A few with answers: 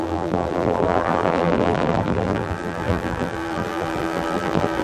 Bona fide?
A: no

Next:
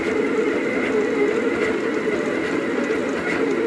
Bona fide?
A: yes